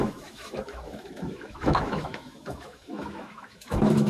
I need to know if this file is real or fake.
fake